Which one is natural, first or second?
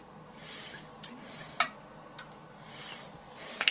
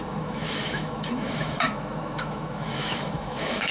first